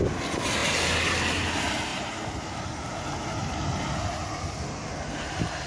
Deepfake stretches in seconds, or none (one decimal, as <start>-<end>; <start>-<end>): 1.9-2.9; 3.4-5.3